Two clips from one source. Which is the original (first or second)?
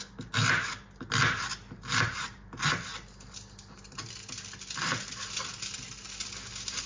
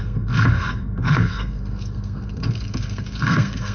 first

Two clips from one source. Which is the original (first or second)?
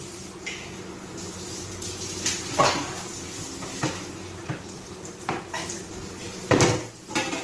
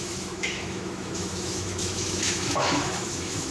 first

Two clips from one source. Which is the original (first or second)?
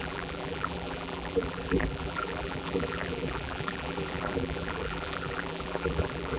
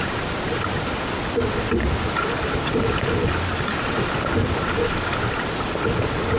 second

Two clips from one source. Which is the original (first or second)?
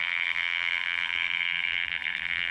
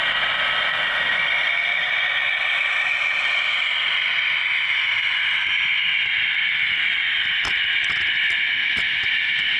second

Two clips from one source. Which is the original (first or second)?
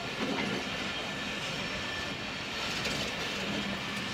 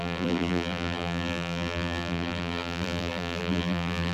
first